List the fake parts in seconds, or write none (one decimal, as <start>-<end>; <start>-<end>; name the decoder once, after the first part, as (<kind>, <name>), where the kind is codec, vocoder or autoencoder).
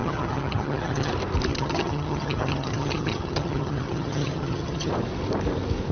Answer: 0.0-1.1 (vocoder, HiFi-GAN); 1.5-4.9